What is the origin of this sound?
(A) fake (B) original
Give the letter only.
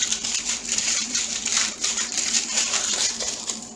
A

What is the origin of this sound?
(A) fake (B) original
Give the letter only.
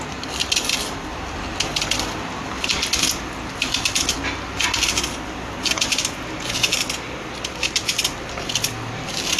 B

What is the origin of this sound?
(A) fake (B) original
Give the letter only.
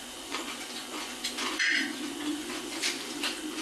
A